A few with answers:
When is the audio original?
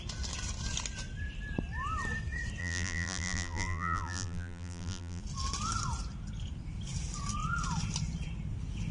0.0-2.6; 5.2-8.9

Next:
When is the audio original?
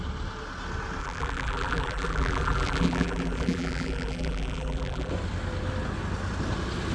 0.0-1.0; 5.1-6.9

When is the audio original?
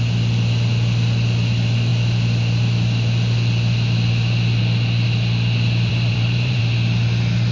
0.0-5.9; 6.6-7.5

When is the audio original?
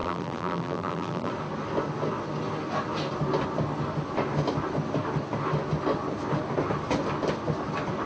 1.3-8.1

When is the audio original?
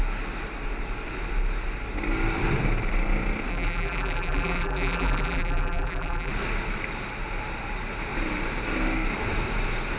0.0-3.5; 6.3-10.0